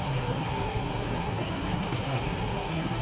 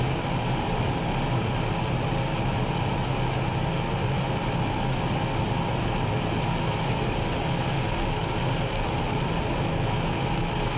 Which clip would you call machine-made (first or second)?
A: first